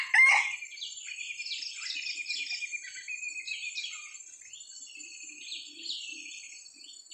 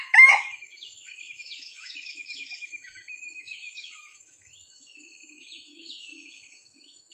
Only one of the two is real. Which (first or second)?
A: first